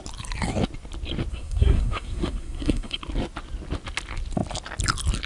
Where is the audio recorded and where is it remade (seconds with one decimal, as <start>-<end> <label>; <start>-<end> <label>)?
0.0-1.3 recorded; 1.3-3.0 remade; 3.0-5.3 recorded